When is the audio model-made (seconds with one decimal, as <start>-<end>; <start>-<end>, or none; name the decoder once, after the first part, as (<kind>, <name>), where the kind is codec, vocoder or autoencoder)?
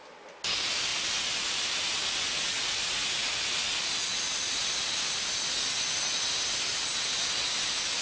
none